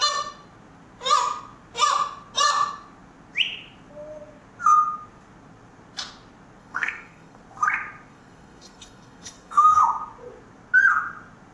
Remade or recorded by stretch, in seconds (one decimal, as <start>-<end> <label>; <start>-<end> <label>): 0.0-6.6 recorded; 6.6-7.4 remade; 7.4-8.1 recorded; 8.1-9.8 remade; 9.8-11.5 recorded